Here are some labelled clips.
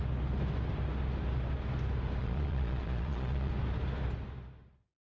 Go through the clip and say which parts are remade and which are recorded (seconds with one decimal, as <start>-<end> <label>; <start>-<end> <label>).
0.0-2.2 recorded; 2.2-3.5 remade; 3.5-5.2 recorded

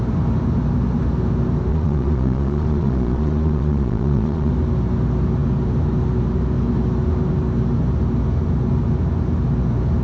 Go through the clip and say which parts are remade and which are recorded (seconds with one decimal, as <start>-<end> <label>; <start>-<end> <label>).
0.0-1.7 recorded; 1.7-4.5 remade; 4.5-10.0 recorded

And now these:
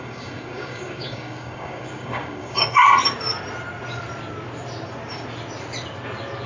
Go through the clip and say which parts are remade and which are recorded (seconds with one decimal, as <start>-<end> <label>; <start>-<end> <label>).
0.0-2.8 remade; 2.8-6.5 recorded

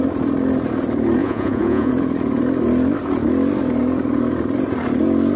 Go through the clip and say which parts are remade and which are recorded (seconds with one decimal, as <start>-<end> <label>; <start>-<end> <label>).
0.0-1.2 recorded; 1.2-1.9 remade; 1.9-5.4 recorded

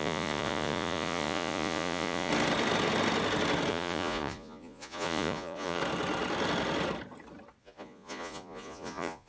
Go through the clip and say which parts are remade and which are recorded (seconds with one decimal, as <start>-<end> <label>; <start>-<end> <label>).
0.0-2.3 remade; 2.3-3.7 recorded; 3.7-5.8 remade; 5.8-7.6 recorded; 7.6-9.3 remade

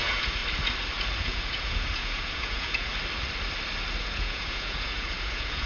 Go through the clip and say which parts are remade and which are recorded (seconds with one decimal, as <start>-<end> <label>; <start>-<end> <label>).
0.0-0.4 remade; 0.4-1.2 recorded; 1.2-2.9 remade; 2.9-4.0 recorded; 4.0-5.7 remade

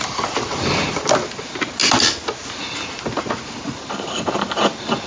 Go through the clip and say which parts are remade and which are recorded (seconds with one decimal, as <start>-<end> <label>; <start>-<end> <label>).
0.0-5.1 recorded

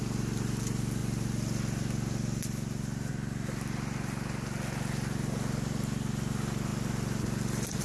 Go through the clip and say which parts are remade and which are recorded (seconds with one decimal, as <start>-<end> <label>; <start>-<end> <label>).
0.0-7.8 recorded